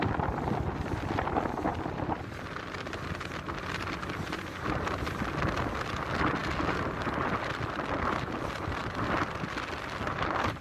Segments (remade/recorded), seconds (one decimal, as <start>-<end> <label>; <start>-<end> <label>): 0.0-10.6 recorded